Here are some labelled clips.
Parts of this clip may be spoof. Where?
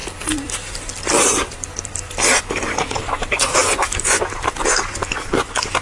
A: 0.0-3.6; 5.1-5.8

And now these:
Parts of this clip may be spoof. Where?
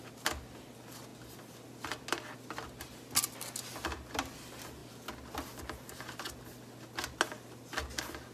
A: none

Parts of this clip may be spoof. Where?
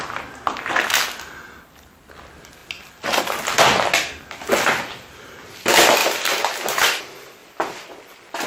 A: 6.0-7.0; 7.4-7.9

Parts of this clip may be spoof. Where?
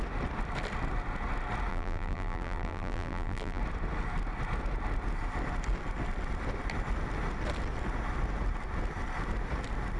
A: 1.7-3.6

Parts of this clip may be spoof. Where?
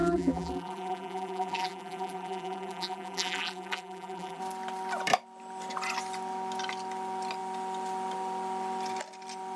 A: 0.0-4.4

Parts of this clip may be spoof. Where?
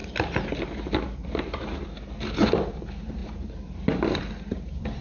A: 2.4-5.0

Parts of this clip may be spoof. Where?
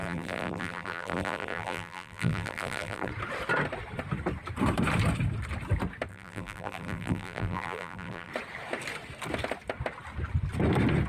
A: 0.0-3.1; 6.1-8.3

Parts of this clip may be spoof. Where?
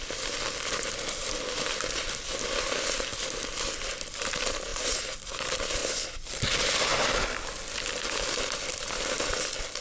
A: 0.0-6.9; 7.9-9.8